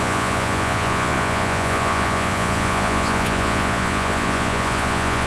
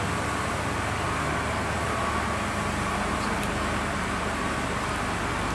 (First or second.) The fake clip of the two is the first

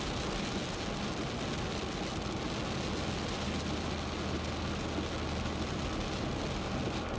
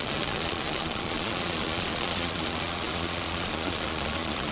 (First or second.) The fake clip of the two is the second